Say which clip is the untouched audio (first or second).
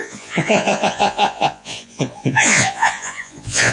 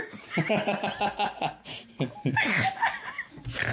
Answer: second